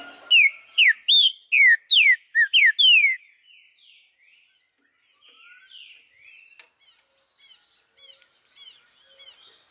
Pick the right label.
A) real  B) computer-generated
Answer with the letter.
A